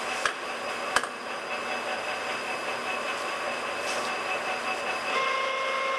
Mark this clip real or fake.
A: real